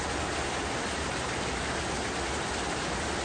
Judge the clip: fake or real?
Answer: real